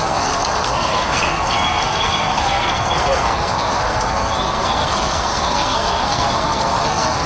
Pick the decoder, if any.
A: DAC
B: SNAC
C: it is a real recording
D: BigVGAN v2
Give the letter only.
B